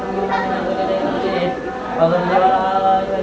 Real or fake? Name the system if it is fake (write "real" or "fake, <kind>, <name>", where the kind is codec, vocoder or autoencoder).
real